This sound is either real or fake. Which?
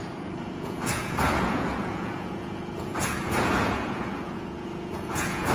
fake